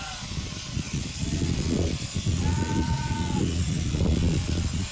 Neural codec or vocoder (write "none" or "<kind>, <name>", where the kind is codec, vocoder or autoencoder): vocoder, Vocos